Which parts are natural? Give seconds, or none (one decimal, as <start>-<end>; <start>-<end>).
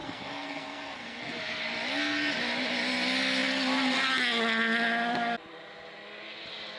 1.6-6.8